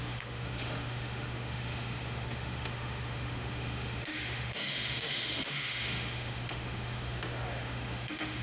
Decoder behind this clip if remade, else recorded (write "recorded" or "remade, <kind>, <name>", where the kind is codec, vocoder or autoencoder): remade, autoencoder, DAC-VAE